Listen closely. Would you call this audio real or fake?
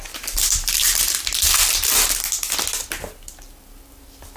real